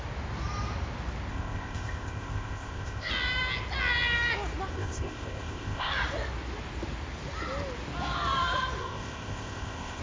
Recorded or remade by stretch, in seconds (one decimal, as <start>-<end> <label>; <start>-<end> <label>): 0.0-1.3 recorded; 1.3-3.1 remade; 3.1-4.7 recorded; 4.7-5.9 remade; 5.9-8.8 recorded; 8.8-10.0 remade